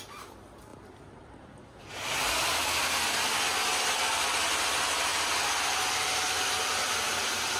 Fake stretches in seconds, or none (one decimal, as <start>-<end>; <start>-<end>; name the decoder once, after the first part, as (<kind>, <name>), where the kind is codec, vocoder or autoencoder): 0.7-2.8 (vocoder, BigVGAN v2); 5.1-6.3